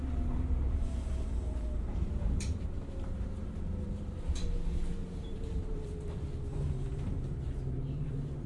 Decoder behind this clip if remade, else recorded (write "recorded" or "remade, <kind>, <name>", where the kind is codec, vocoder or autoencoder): remade, vocoder, BigVGAN v2